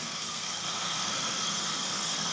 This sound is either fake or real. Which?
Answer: fake